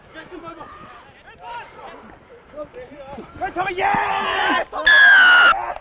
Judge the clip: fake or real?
real